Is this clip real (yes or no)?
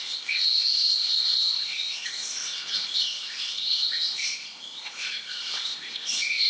no